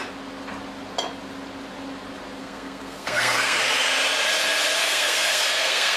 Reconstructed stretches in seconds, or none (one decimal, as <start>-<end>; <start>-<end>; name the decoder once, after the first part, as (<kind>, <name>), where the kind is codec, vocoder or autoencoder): 2.4-3.6 (codec, SNAC); 4.8-6.0